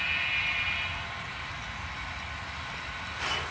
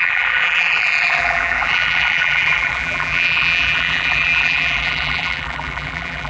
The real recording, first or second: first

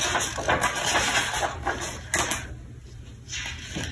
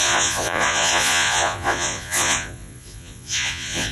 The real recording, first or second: first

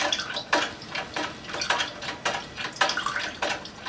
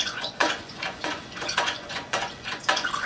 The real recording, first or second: first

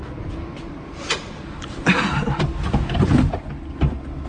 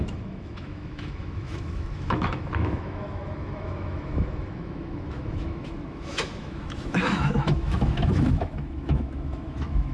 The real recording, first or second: first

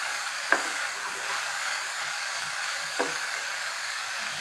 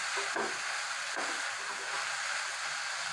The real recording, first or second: second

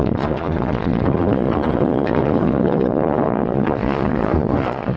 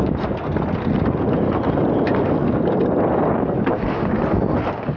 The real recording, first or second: second